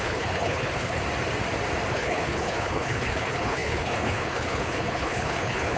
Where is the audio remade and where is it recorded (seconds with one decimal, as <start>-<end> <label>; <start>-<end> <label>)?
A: 0.0-1.0 remade; 1.0-1.9 recorded; 1.9-5.8 remade